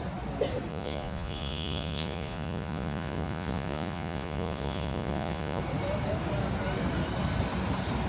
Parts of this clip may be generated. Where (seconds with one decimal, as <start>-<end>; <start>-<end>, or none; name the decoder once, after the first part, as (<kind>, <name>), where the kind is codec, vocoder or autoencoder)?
0.7-5.6 (vocoder, Vocos)